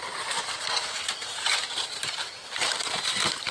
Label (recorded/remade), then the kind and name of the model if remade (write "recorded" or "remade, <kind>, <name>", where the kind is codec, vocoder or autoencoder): remade, vocoder, BigVGAN v2